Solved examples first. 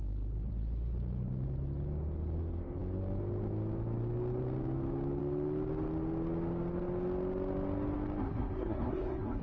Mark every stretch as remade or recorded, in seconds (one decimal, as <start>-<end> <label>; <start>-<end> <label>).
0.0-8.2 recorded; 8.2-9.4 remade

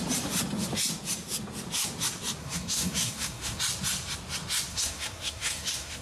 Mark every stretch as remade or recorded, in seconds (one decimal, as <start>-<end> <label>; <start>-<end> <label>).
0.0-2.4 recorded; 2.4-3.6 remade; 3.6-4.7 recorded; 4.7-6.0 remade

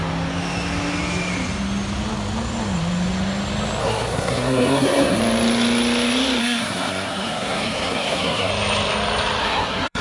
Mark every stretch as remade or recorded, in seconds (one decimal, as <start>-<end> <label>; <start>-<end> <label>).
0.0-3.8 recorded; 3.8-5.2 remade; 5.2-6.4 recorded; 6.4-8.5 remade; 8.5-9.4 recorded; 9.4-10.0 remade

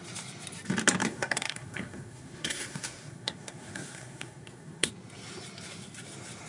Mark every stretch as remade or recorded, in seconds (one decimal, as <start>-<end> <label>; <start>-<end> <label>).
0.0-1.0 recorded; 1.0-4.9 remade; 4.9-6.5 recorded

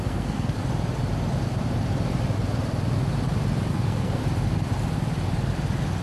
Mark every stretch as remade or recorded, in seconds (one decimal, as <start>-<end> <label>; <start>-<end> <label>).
0.0-0.6 remade; 0.6-3.7 recorded; 3.7-4.2 remade; 4.2-6.0 recorded

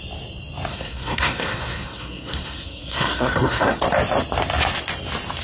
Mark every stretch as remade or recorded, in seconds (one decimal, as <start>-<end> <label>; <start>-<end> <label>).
0.0-0.7 recorded; 0.7-3.8 remade; 3.8-5.4 recorded

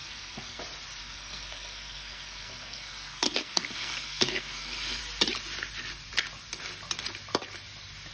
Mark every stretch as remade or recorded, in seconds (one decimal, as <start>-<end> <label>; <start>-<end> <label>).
0.0-0.6 remade; 0.6-1.0 recorded; 1.0-5.0 remade; 5.0-8.1 recorded